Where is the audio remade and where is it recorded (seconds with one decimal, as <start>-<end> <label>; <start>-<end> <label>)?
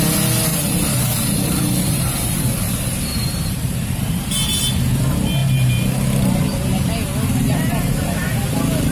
0.0-0.5 recorded; 0.5-2.4 remade; 2.4-3.1 recorded; 3.1-4.3 remade; 4.3-8.9 recorded